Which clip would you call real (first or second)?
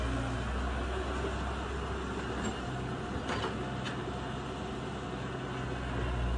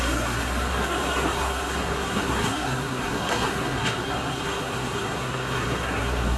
first